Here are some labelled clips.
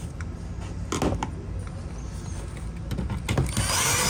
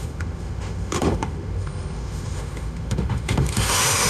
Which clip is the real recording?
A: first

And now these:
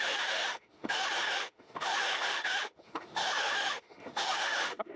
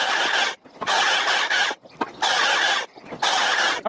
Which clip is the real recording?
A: second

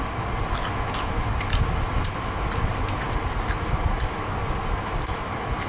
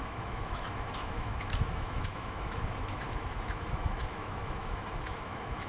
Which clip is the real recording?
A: first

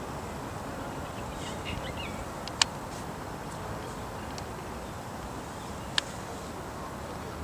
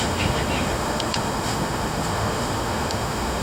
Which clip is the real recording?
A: first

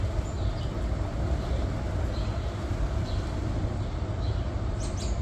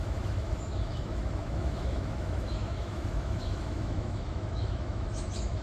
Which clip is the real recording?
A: first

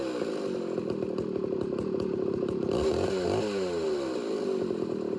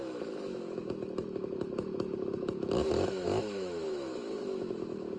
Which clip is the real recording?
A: first